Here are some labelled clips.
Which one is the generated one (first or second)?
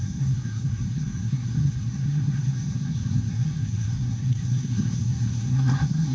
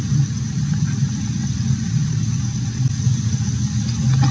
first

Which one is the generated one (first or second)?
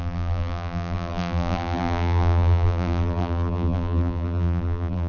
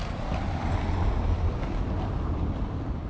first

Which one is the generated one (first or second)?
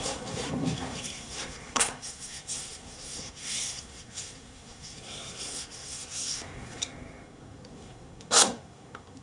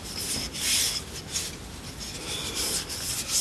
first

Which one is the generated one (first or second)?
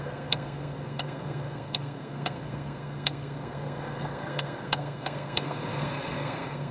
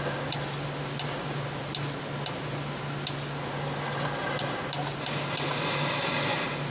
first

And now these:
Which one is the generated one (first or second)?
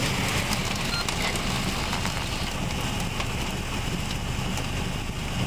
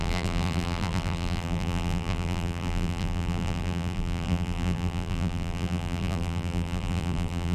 second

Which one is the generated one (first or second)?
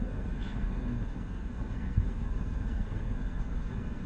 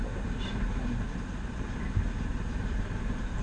first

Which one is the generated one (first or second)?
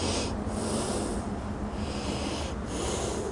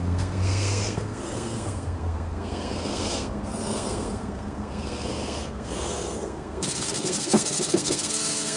second